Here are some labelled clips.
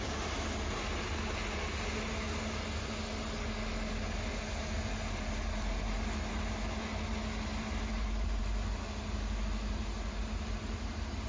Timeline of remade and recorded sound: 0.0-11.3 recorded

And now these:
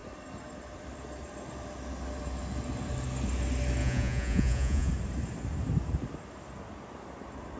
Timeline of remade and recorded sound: 0.0-3.8 recorded; 3.8-4.9 remade; 4.9-7.6 recorded